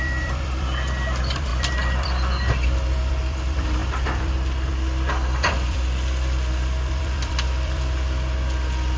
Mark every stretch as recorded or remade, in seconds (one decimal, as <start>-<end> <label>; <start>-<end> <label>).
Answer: 0.0-9.0 remade